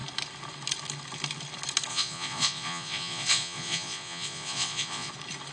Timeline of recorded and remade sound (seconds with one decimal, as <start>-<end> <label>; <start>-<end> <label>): 0.0-1.9 recorded; 1.9-5.1 remade; 5.1-5.5 recorded